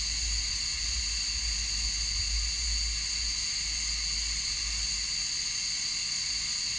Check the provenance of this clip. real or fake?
real